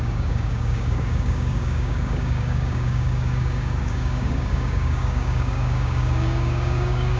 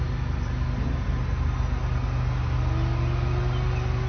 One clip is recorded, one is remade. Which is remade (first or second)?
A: first